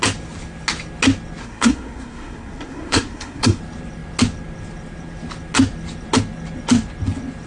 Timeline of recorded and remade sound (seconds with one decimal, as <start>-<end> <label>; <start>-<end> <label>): 0.0-1.4 recorded; 1.4-3.6 remade; 3.6-7.5 recorded